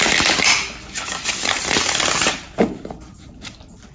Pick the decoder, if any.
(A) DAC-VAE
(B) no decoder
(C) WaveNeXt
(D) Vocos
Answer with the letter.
B